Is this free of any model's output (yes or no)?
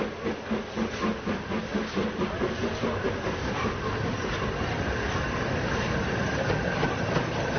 yes